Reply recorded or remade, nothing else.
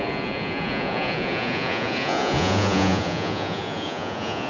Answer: remade